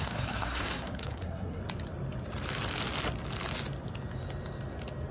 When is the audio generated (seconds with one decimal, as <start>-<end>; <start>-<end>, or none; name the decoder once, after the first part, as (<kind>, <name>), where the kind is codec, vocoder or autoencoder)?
0.0-1.6 (codec, SNAC)